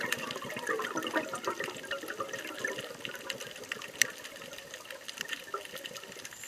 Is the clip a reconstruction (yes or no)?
yes